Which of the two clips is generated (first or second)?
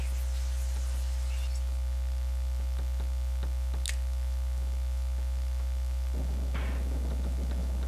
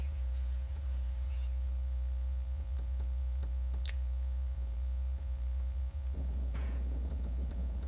second